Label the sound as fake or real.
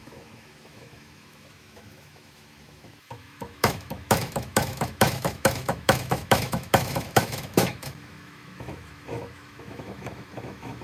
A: fake